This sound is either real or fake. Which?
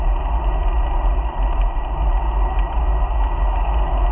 real